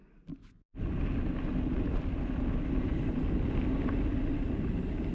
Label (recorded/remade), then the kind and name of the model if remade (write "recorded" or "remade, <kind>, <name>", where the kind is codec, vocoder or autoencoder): recorded